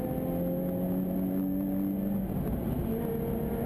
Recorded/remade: recorded